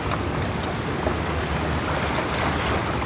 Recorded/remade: recorded